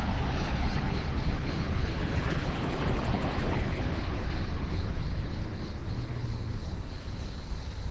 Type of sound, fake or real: fake